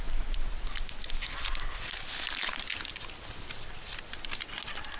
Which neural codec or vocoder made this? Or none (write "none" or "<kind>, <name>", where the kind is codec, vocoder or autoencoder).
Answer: none